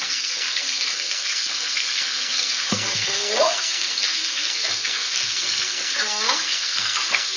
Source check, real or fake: fake